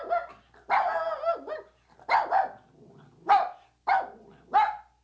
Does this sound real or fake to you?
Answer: real